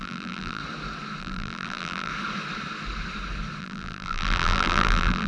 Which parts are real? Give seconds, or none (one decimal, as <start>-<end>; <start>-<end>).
0.6-1.2; 2.1-3.6